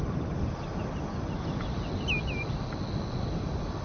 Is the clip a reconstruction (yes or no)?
no